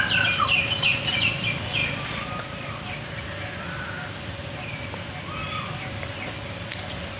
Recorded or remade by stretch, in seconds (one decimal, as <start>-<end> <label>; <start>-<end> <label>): 0.0-7.2 recorded

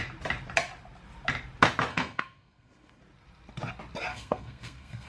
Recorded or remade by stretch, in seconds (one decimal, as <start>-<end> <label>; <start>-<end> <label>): 0.0-1.9 recorded; 1.9-3.0 remade; 3.0-4.1 recorded; 4.1-5.1 remade

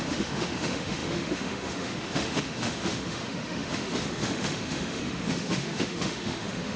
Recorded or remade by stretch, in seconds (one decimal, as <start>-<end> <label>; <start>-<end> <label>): 0.0-6.8 remade